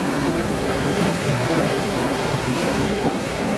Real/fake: fake